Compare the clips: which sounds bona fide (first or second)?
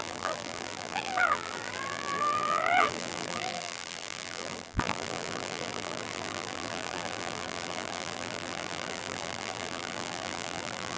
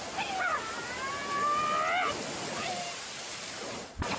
second